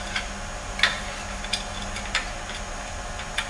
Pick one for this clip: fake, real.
real